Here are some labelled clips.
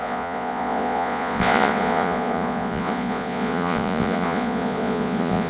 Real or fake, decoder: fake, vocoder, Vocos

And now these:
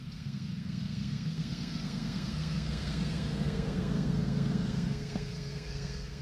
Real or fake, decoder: fake, codec, SNAC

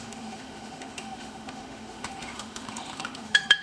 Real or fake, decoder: fake, autoencoder, DAC-VAE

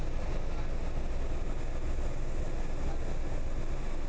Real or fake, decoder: real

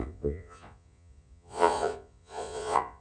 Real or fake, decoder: fake, vocoder, Vocos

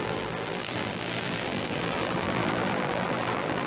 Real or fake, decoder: fake, vocoder, BigVGAN v2